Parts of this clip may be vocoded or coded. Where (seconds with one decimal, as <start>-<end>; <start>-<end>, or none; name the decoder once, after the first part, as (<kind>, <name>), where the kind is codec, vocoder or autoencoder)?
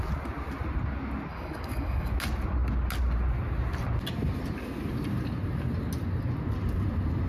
1.3-2.1 (codec, DAC)